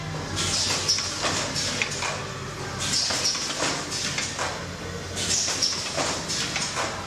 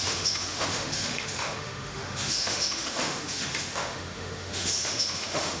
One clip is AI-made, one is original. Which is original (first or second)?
first